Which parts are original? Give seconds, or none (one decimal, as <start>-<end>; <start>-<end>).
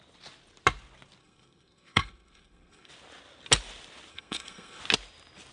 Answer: 0.0-1.2; 2.9-4.1; 4.8-5.5